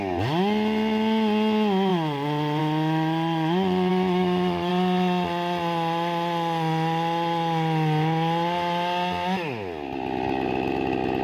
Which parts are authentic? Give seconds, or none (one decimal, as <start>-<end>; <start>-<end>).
0.0-3.9; 4.7-11.2